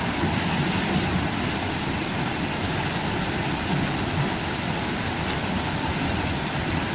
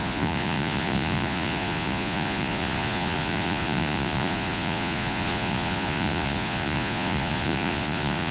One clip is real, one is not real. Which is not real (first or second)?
second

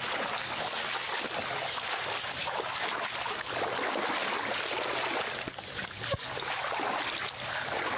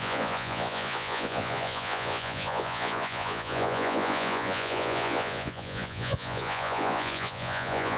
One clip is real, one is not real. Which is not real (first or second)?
second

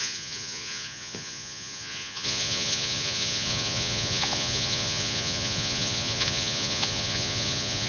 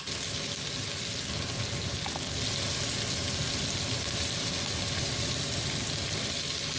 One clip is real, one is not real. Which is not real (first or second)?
first